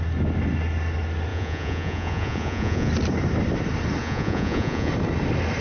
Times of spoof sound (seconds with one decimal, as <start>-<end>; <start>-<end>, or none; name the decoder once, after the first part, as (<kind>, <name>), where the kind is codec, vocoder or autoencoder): 1.3-2.9 (vocoder, Vocos); 4.0-4.9